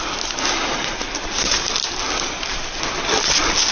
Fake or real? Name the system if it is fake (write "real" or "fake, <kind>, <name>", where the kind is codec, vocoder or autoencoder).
real